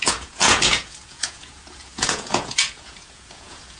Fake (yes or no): yes